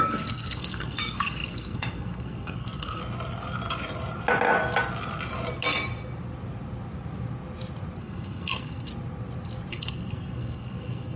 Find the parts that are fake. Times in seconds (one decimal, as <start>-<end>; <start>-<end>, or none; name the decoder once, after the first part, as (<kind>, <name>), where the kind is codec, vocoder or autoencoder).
0.0-3.0 (codec, SNAC); 8.0-8.9; 9.7-11.2